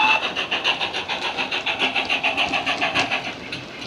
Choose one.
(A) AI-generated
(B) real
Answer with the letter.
B